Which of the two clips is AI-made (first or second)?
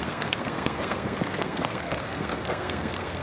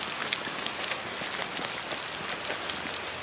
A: first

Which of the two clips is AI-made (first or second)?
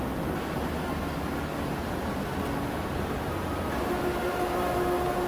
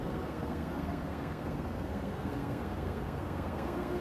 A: second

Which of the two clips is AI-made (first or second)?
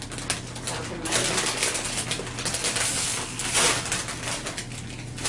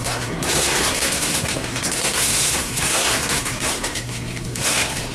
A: second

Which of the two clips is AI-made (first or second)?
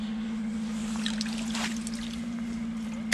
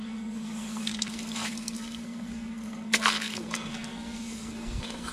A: second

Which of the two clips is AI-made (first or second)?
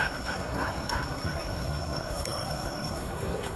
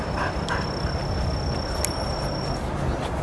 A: first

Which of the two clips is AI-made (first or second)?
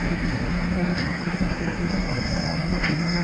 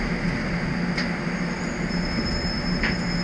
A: first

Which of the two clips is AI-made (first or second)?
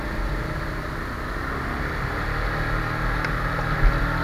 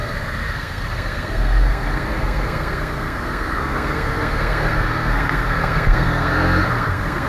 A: second